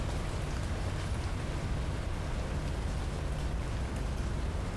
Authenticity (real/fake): real